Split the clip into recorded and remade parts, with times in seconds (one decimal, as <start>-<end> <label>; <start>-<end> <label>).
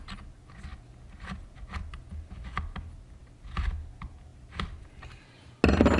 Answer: 0.0-6.0 recorded